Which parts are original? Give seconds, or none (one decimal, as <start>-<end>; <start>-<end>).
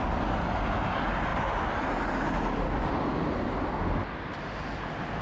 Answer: 0.0-5.2